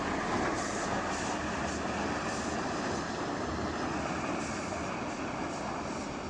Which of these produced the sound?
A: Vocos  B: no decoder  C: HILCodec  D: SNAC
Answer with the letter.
B